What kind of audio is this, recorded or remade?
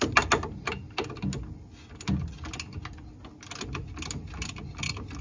recorded